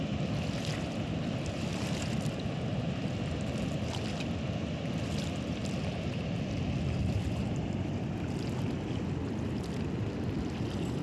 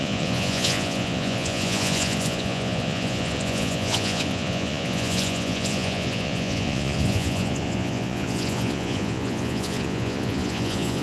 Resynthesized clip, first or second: second